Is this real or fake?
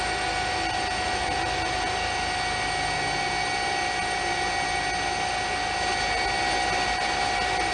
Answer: real